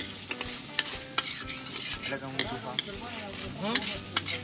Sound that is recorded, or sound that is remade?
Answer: recorded